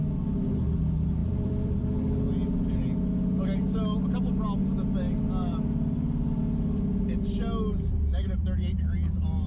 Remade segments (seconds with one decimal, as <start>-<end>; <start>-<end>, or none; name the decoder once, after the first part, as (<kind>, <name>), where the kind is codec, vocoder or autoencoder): 1.2-2.0 (vocoder, BigVGAN v2); 5.4-6.4